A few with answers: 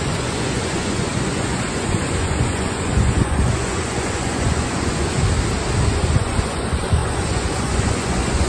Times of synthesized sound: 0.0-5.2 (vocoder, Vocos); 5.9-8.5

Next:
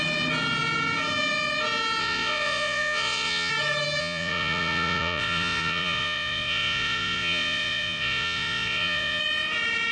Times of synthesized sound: 2.0-3.5 (vocoder, Vocos); 4.0-9.2